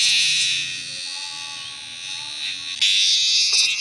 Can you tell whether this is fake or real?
real